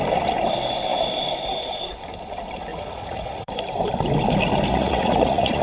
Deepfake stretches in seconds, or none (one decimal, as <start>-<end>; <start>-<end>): 2.7-3.5; 4.7-5.6